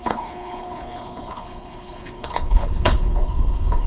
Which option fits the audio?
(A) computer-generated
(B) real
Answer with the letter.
A